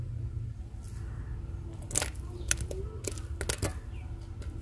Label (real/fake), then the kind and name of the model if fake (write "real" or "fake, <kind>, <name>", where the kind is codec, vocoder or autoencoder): real